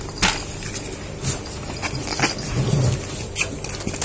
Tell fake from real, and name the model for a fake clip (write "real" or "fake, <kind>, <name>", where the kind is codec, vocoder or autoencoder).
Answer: real